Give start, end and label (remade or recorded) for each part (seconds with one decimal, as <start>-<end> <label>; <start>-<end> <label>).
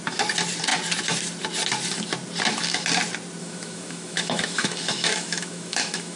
0.0-3.4 recorded; 3.4-6.2 remade